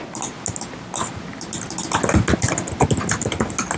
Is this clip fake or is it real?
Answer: real